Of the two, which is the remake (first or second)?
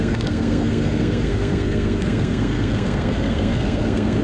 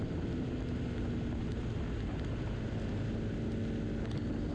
first